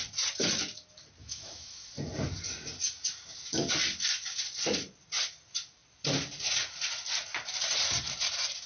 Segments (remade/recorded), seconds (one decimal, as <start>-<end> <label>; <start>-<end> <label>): 0.0-1.2 recorded; 1.2-1.9 remade; 1.9-8.7 recorded